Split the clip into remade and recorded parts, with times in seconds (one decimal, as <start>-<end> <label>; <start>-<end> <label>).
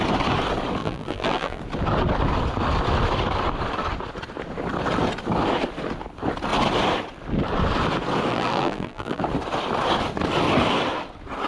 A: 0.0-0.8 recorded; 0.8-1.6 remade; 1.6-8.3 recorded; 8.3-9.2 remade; 9.2-11.5 recorded